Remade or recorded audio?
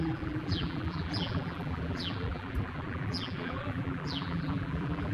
remade